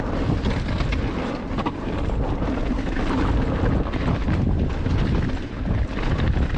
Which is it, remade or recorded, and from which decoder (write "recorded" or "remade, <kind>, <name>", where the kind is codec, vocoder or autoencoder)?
recorded